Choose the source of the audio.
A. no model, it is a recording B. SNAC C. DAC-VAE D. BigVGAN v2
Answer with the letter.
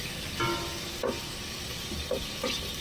A